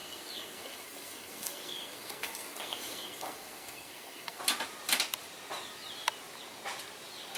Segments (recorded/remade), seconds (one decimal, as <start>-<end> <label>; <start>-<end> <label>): 0.0-4.4 remade; 4.4-7.4 recorded